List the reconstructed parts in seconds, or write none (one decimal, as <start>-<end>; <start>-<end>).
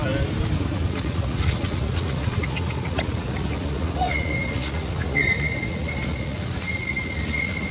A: 0.7-7.7